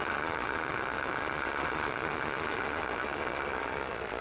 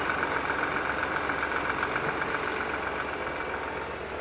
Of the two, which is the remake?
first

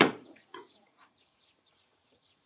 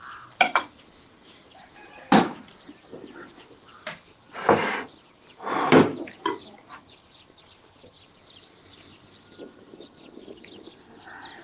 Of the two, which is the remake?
first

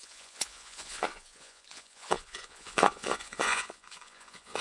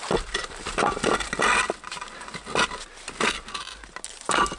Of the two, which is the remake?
first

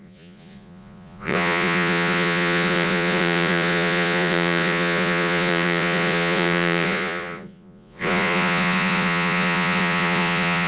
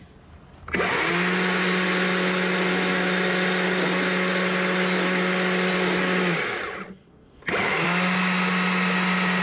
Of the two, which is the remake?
first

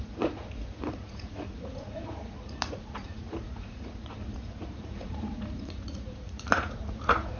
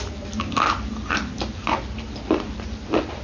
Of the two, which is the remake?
first